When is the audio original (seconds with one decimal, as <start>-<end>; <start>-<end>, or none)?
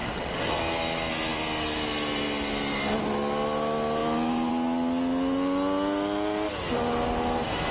0.6-7.7